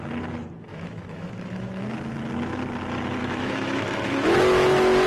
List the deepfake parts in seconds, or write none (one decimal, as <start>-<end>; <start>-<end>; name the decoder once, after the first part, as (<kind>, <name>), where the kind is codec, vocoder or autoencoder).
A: 0.7-1.8 (autoencoder, DAC-VAE); 3.2-4.4